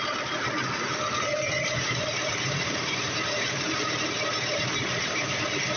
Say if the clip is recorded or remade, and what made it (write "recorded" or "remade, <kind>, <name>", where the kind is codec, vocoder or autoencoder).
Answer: remade, vocoder, BigVGAN v2